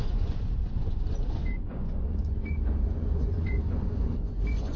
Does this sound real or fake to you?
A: fake